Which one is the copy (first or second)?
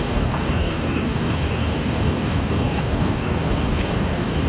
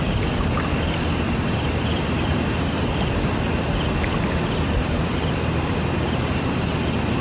first